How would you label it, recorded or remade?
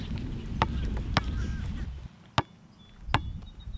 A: recorded